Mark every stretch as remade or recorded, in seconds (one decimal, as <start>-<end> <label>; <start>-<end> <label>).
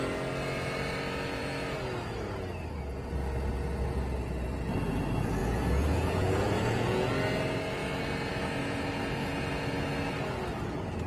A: 0.0-5.4 recorded; 5.4-7.1 remade; 7.1-11.1 recorded